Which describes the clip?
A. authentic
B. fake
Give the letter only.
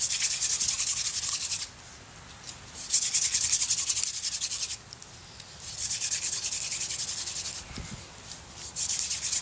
A